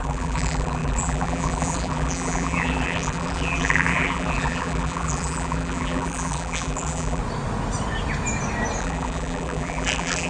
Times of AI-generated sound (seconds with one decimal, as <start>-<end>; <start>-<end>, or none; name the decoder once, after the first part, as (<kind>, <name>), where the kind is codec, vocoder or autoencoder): 0.0-7.2 (vocoder, BigVGAN v2); 8.8-10.3